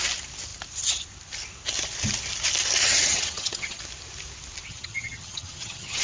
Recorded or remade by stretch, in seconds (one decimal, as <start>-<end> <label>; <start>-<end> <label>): 0.0-2.8 recorded; 2.8-3.8 remade; 3.8-4.7 recorded; 4.7-6.0 remade